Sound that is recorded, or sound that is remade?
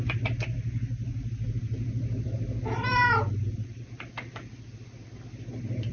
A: recorded